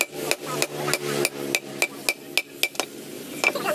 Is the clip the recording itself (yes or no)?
yes